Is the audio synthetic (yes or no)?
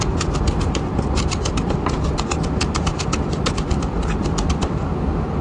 yes